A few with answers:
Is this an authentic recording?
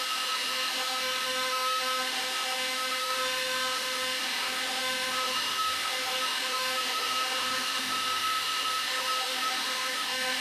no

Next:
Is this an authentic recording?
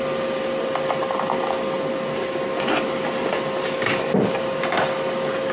yes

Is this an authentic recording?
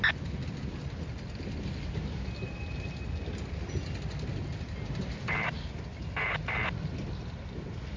yes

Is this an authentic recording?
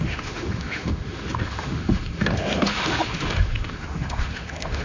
no